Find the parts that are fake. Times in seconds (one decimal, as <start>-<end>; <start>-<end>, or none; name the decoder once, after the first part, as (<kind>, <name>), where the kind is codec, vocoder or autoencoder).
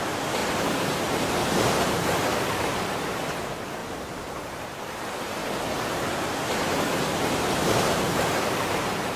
0.0-5.4 (vocoder, BigVGAN v2); 7.2-9.2